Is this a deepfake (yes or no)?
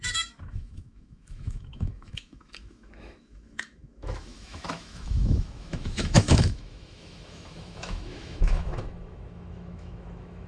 yes